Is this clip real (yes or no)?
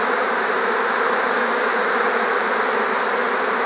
yes